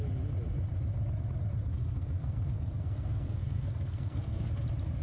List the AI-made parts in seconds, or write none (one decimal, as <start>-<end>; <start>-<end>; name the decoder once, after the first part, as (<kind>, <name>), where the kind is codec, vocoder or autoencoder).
1.7-4.5 (codec, SNAC)